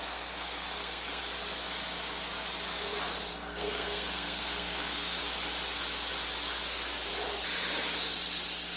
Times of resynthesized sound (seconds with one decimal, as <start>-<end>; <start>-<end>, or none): 0.0-1.2; 3.3-5.2